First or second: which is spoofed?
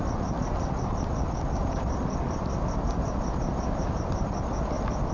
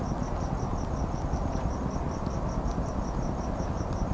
first